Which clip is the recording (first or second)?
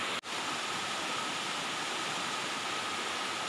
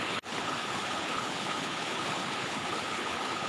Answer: first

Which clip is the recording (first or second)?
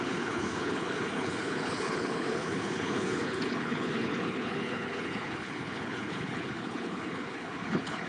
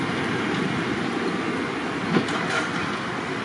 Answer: second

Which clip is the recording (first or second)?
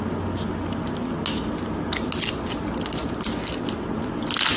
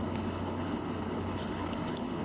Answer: first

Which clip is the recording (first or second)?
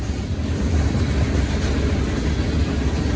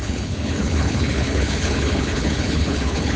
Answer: first